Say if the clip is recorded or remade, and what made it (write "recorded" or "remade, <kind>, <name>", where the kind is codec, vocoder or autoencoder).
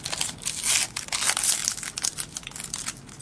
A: recorded